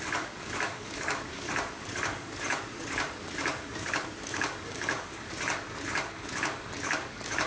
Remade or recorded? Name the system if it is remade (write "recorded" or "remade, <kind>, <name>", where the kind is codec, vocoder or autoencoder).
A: remade, codec, DAC